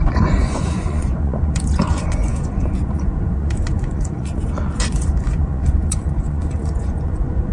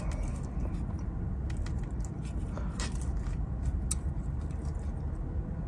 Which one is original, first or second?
second